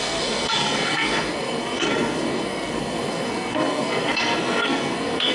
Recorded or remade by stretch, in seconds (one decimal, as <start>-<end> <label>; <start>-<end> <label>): 0.0-5.3 remade